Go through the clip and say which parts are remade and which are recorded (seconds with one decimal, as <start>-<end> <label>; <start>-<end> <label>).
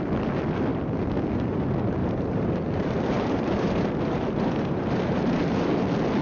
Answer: 0.0-2.0 recorded; 2.0-5.7 remade; 5.7-6.2 recorded